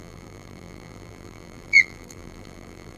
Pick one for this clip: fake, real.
fake